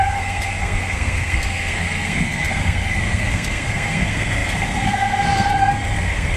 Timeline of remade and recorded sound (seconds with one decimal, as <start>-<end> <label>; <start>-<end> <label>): 0.0-6.4 remade